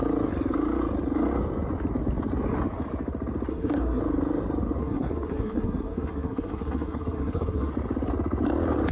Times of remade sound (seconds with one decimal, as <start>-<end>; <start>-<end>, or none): 3.5-4.0; 4.8-7.7